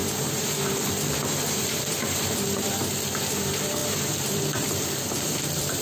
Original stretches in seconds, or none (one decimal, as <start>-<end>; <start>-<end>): 0.0-1.6